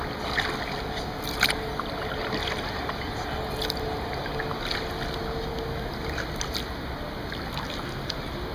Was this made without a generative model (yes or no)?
yes